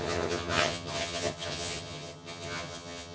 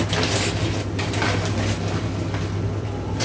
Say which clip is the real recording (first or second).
second